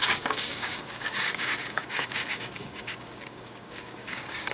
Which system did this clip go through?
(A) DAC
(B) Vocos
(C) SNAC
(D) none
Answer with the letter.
A